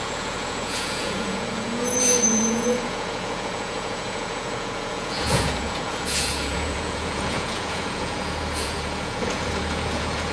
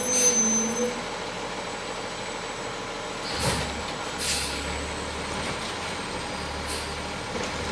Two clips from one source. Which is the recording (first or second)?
second